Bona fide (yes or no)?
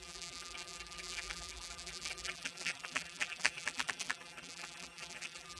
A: no